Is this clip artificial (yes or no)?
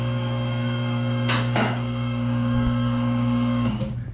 yes